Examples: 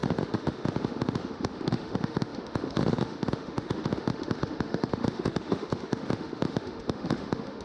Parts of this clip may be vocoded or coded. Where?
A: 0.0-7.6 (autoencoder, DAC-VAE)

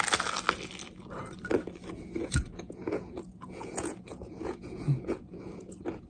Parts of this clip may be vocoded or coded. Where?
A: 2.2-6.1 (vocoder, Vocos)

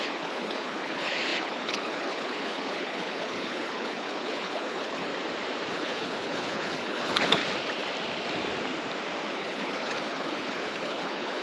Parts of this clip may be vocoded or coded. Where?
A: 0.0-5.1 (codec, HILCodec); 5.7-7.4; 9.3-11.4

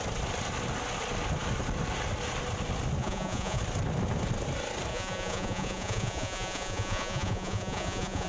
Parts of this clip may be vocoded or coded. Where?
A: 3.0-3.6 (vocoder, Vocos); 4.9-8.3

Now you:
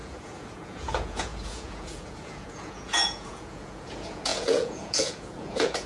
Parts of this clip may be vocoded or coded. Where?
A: 0.0-5.9 (vocoder, Vocos)

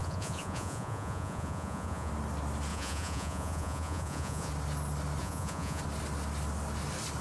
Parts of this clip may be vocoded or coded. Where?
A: 0.0-2.1 (vocoder, Vocos); 2.7-4.5; 5.2-5.8

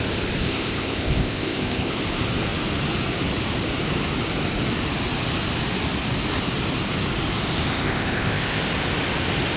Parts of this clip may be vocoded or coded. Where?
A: 0.4-2.0 (codec, ZipCodec); 7.7-8.6

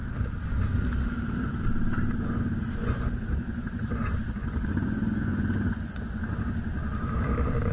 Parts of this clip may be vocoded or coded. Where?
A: 2.8-6.2 (vocoder, Vocos)